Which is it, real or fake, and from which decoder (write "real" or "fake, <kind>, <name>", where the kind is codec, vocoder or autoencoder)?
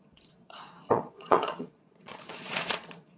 fake, vocoder, Vocos